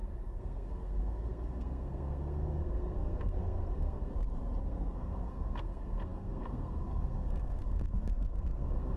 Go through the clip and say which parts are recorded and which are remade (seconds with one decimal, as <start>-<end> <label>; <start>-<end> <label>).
0.0-4.1 remade; 4.1-4.6 recorded; 4.6-9.0 remade

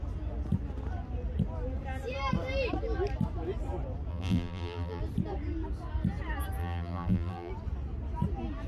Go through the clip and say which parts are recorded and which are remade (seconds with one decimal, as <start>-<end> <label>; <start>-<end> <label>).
0.0-4.1 recorded; 4.1-5.0 remade; 5.0-6.6 recorded; 6.6-7.5 remade; 7.5-8.7 recorded

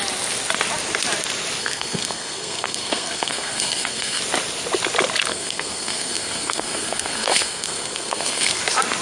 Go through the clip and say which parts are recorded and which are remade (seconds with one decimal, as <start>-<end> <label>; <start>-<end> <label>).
0.0-1.6 recorded; 1.6-4.2 remade; 4.2-5.3 recorded; 5.3-8.6 remade; 8.6-9.0 recorded

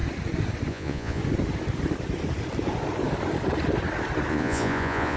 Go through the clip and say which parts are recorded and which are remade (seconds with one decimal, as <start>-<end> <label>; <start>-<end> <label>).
0.0-0.7 recorded; 0.7-1.2 remade; 1.2-4.3 recorded; 4.3-5.2 remade

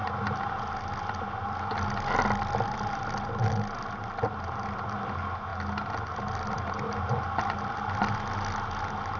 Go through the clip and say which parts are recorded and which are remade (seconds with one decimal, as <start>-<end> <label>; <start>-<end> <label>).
0.0-9.2 recorded

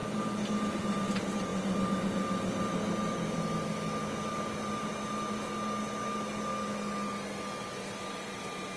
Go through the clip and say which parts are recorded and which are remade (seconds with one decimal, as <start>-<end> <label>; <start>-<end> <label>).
0.0-0.8 remade; 0.8-8.8 recorded

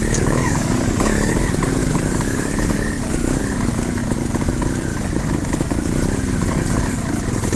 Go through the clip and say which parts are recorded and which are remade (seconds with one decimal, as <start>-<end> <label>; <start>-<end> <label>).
0.0-1.4 remade; 1.4-1.8 recorded; 1.8-3.4 remade; 3.4-4.9 recorded; 4.9-5.9 remade; 5.9-7.6 recorded

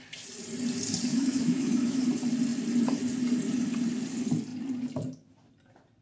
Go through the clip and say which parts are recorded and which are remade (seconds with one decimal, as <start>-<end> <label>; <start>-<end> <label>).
0.0-1.1 recorded; 1.1-2.0 remade; 2.0-6.0 recorded